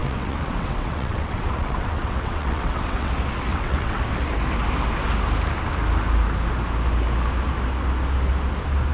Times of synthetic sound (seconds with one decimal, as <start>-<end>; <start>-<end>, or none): 0.0-3.1; 3.5-4.0